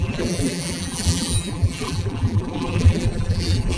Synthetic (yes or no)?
yes